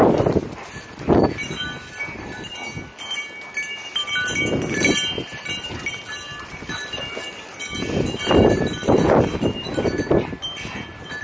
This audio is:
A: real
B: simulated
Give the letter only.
A